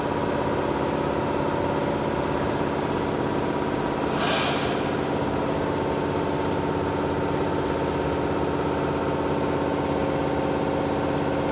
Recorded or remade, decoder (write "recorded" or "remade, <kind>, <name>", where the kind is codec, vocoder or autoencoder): recorded